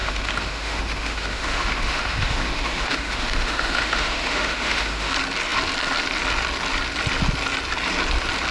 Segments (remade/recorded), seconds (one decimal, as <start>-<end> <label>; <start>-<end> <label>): 0.0-5.1 remade; 5.1-8.5 recorded